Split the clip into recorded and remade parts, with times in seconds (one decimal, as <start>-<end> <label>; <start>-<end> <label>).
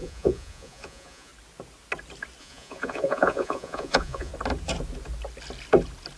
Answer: 0.0-1.3 remade; 1.3-2.4 recorded; 2.4-4.3 remade; 4.3-6.2 recorded